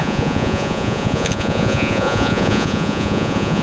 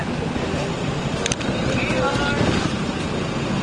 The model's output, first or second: first